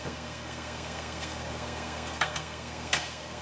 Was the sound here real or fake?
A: fake